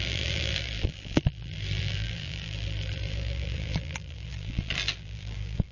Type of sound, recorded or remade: remade